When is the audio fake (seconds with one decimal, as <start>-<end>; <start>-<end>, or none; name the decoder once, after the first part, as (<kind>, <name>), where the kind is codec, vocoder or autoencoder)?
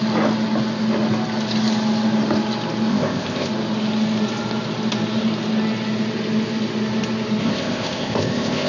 2.9-3.5 (codec, ZipCodec); 7.4-8.7